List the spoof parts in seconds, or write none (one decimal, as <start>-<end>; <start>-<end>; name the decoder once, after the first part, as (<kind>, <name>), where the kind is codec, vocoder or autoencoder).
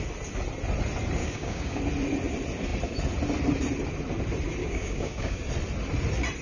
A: 1.2-1.8 (codec, DAC); 4.6-5.4